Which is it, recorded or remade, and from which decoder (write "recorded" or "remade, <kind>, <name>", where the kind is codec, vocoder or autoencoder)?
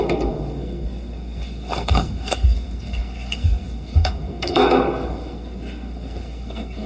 remade, codec, SNAC